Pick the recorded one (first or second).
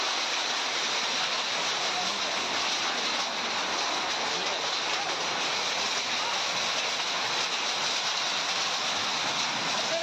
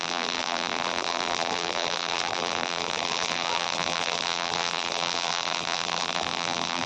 first